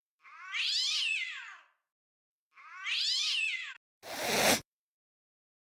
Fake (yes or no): no